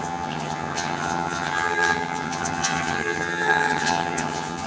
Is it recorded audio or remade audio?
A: remade